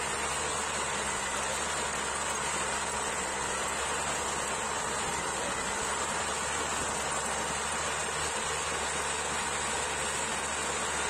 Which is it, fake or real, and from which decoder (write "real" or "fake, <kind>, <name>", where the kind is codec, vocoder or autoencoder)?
real